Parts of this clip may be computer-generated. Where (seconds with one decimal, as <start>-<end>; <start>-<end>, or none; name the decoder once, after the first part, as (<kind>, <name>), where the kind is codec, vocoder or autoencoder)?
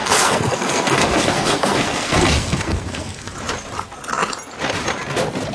0.0-3.3 (codec, SNAC)